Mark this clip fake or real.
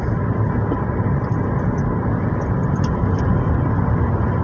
real